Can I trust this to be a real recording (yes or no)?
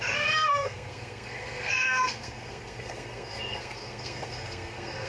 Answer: no